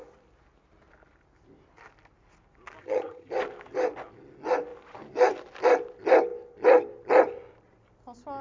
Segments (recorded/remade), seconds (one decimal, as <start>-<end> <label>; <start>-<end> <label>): 0.0-2.8 recorded; 2.8-3.3 remade; 3.3-8.4 recorded

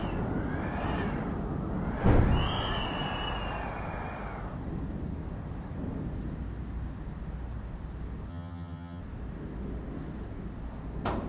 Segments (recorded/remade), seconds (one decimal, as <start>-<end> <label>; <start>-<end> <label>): 0.0-8.3 recorded; 8.3-9.0 remade; 9.0-11.3 recorded

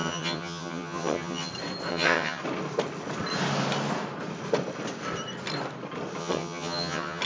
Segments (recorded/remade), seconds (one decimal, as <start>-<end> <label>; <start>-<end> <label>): 0.0-1.5 remade; 1.5-1.9 recorded; 1.9-2.4 remade; 2.4-6.2 recorded; 6.2-7.2 remade

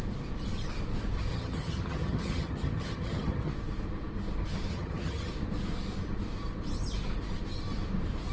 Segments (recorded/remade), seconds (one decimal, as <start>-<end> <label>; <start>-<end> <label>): 0.0-1.3 recorded; 1.3-3.5 remade; 3.5-4.7 recorded; 4.7-5.3 remade; 5.3-8.3 recorded

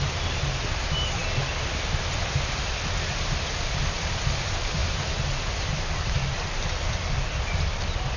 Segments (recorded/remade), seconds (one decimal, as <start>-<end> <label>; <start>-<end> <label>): 0.0-8.2 recorded